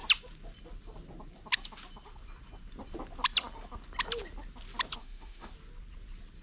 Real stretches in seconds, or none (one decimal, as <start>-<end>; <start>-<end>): 0.0-5.0; 5.5-6.4